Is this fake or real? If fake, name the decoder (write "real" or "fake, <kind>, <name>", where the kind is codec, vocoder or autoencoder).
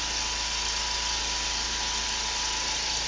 real